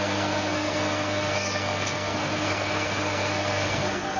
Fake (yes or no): yes